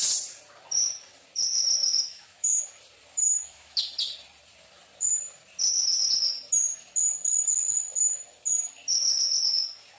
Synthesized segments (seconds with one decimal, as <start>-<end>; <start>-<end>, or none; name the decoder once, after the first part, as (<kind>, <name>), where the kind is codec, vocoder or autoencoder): 1.8-2.6 (autoencoder, DAC-VAE); 3.2-3.8